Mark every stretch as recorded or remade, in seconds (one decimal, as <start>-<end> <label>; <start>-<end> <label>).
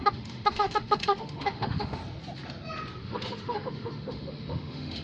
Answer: 0.0-2.0 remade; 2.0-3.0 recorded; 3.0-5.0 remade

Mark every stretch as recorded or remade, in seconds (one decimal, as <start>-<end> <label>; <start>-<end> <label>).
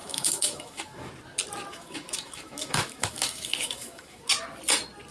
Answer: 0.0-1.1 remade; 1.1-1.7 recorded; 1.7-4.2 remade; 4.2-5.1 recorded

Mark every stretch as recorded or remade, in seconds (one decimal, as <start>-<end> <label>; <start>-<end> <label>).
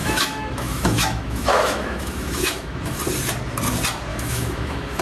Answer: 0.0-3.0 remade; 3.0-4.1 recorded; 4.1-5.0 remade